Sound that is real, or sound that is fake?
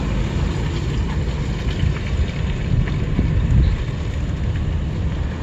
real